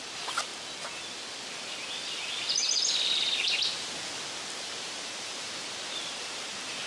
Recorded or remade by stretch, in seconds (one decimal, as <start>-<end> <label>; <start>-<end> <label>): 0.0-0.5 remade; 0.5-4.6 recorded; 4.6-6.9 remade